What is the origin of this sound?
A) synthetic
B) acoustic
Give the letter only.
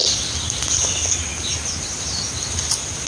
B